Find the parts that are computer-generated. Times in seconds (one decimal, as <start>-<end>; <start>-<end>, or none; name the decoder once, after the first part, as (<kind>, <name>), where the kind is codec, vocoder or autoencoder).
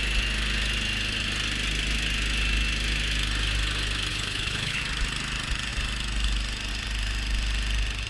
4.1-4.8 (codec, HILCodec)